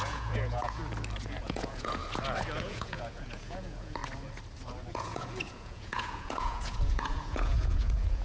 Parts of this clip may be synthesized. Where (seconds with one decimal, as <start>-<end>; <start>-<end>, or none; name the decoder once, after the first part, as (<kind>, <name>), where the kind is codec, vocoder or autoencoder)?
0.0-0.8 (vocoder, Vocos); 1.4-2.0; 2.6-4.0; 4.9-8.2